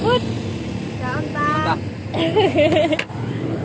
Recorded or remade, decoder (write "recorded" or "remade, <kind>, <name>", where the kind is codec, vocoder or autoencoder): recorded